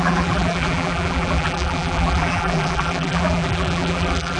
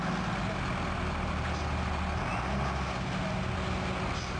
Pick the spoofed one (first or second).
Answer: first